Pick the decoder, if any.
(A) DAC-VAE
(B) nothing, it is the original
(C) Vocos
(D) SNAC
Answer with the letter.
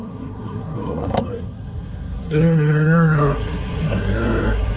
D